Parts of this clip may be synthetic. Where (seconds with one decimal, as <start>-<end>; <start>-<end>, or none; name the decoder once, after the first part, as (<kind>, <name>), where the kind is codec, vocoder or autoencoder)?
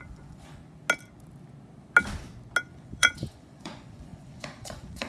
0.0-0.6 (vocoder, Vocos); 2.6-5.1